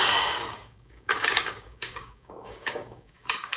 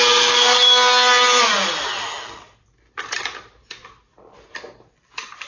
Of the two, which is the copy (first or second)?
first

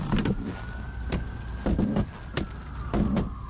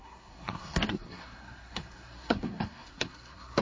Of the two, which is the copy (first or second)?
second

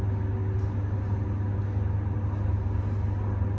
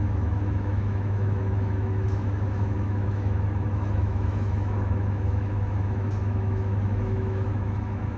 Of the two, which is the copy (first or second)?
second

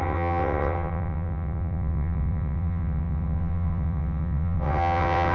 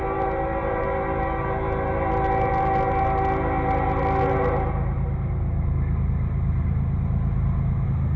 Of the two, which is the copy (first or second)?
first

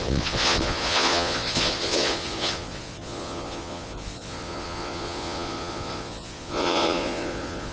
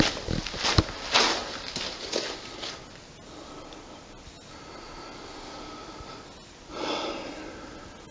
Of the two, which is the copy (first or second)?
first